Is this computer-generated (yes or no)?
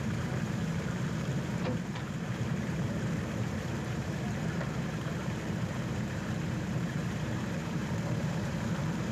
yes